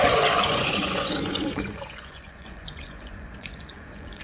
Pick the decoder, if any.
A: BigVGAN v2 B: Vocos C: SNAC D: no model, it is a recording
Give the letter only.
B